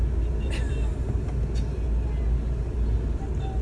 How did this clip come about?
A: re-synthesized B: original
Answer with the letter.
B